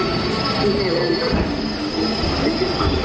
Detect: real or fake real